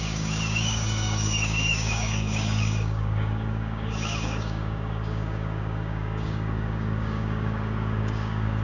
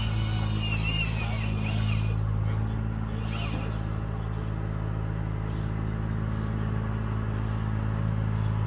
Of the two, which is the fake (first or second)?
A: first